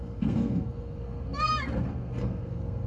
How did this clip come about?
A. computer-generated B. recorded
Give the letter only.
A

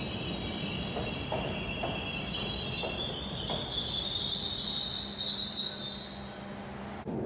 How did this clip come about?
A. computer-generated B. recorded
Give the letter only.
B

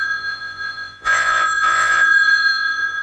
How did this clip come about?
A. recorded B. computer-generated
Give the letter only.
B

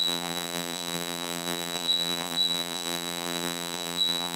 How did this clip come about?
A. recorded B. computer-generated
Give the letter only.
B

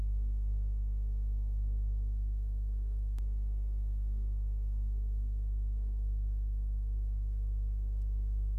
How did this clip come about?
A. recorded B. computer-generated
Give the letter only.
B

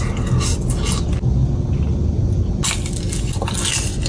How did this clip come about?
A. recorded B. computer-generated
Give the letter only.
A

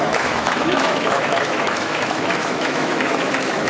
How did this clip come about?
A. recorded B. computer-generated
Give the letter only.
B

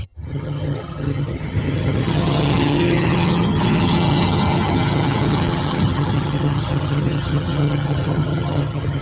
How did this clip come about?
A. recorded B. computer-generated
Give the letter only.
B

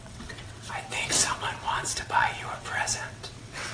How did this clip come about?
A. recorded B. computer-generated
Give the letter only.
B